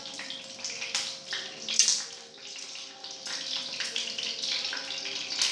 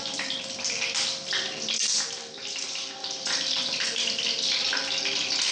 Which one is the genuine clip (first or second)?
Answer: first